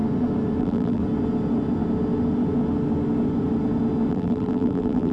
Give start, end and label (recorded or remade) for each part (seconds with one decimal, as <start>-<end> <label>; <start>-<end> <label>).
0.0-0.6 recorded; 0.6-1.0 remade; 1.0-4.1 recorded; 4.1-5.1 remade